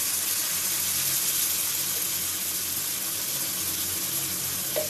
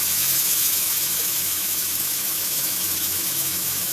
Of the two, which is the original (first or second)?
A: first